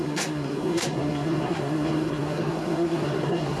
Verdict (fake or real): fake